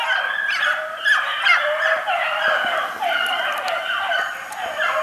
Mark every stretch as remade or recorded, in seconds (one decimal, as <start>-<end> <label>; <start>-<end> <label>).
0.0-1.9 recorded; 1.9-4.1 remade; 4.1-5.0 recorded